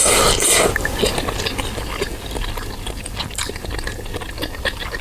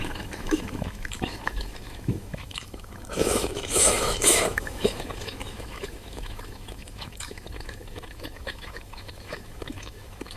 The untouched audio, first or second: first